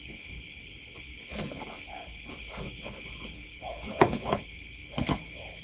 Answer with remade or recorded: remade